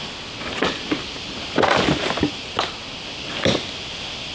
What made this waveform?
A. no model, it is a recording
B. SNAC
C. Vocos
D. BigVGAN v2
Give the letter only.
A